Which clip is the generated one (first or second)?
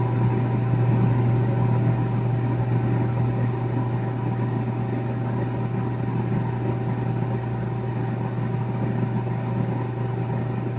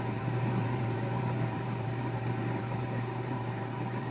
second